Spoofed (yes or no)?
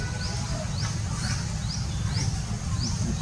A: no